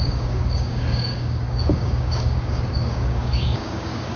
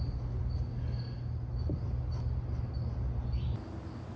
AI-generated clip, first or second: first